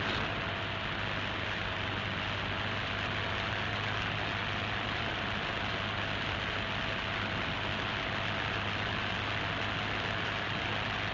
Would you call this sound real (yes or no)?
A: yes